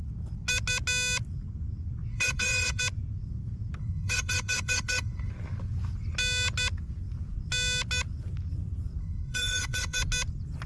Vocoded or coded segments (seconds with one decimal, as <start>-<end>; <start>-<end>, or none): 2.1-2.8; 3.8-5.3; 9.0-10.0